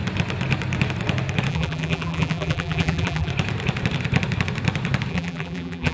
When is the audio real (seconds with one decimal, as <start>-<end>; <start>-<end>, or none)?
0.0-1.5; 3.3-5.1